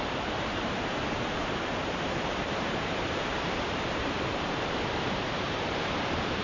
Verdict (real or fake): fake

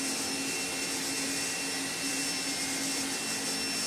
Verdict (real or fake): real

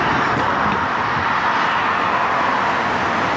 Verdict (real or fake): real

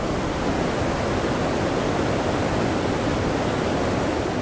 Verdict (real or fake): real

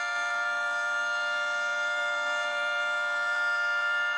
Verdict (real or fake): fake